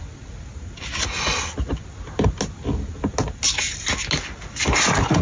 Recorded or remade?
recorded